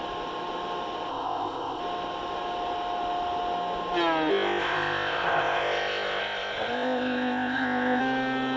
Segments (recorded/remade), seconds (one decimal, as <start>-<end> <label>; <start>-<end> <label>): 0.0-1.1 recorded; 1.1-1.8 remade; 1.8-4.3 recorded; 4.3-8.0 remade; 8.0-8.6 recorded